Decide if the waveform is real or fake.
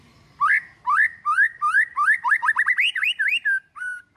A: real